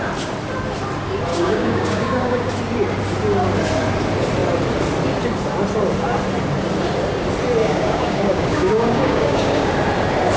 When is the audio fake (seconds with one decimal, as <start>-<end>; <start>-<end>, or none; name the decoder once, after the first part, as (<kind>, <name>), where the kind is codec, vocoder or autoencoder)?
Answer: 1.3-2.5 (codec, DAC); 7.6-9.7